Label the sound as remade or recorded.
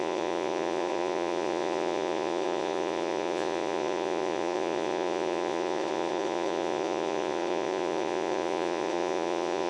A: remade